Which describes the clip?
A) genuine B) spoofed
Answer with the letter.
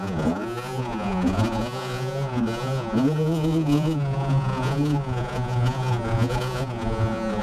B